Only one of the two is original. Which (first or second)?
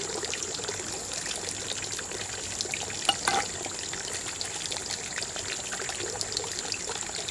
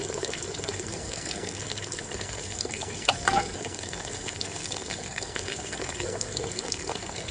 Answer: first